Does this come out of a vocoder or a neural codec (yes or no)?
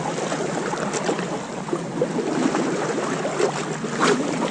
no